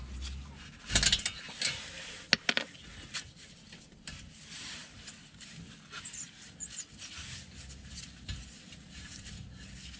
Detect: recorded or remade recorded